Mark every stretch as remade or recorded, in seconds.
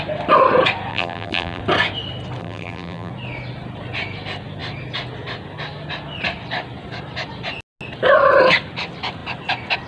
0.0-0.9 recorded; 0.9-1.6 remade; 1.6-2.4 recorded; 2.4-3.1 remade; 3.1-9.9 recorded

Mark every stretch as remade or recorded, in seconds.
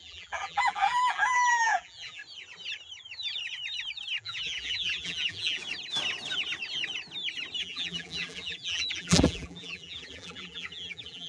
0.0-2.2 remade; 2.2-4.2 recorded; 4.2-5.6 remade; 5.6-7.6 recorded; 7.6-11.3 remade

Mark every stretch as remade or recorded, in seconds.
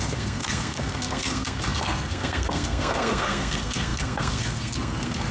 0.0-5.3 remade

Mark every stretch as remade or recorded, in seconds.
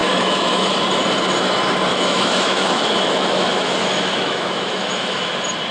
0.0-0.7 remade; 0.7-1.9 recorded; 1.9-5.3 remade; 5.3-5.7 recorded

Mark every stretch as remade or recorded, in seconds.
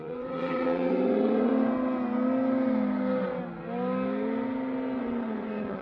0.0-1.5 remade; 1.5-5.0 recorded; 5.0-5.8 remade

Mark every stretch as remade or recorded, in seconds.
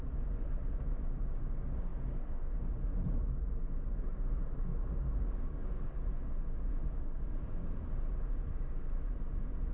0.0-9.7 recorded